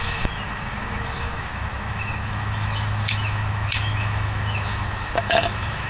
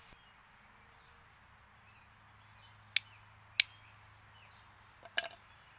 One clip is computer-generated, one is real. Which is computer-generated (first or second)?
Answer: first